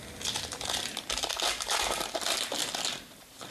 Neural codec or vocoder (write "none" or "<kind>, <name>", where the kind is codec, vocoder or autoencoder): none